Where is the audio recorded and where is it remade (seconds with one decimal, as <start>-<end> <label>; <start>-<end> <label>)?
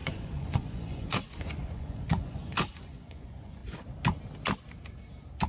0.0-3.6 remade; 3.6-5.5 recorded